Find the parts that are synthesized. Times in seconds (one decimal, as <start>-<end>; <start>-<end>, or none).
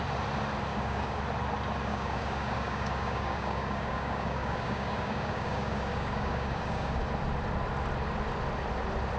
0.7-1.2; 1.9-7.0